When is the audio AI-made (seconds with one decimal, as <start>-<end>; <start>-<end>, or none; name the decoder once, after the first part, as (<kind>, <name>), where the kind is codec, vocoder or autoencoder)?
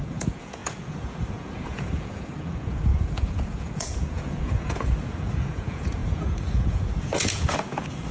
0.0-8.1 (vocoder, Vocos)